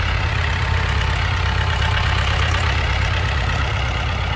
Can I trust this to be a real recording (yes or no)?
no